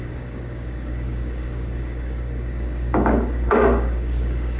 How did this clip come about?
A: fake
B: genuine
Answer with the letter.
A